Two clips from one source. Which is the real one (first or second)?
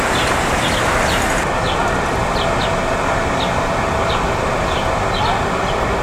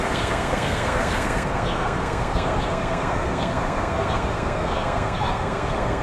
first